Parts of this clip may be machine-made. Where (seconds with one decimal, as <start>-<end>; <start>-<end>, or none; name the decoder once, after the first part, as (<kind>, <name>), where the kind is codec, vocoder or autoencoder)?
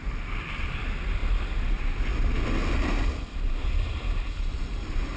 none